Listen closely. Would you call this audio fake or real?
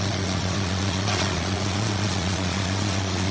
fake